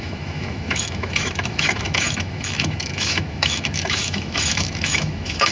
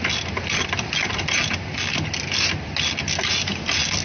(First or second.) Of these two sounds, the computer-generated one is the first